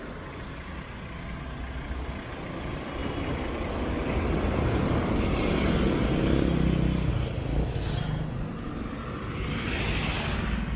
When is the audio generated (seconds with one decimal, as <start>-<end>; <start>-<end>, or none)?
none